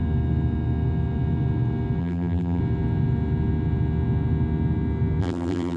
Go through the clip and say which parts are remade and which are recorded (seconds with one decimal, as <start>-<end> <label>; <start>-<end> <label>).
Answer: 0.0-2.0 recorded; 2.0-2.6 remade; 2.6-5.2 recorded; 5.2-5.8 remade